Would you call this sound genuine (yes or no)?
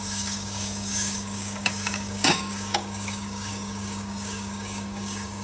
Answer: no